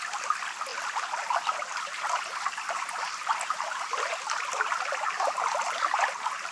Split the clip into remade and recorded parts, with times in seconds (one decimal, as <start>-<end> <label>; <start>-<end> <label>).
0.0-6.5 recorded